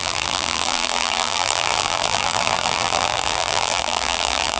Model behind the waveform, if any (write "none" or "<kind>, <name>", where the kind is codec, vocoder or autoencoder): vocoder, BigVGAN v2